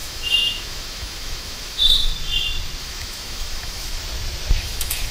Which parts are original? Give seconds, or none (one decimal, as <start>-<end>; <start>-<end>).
2.1-2.8; 4.0-4.6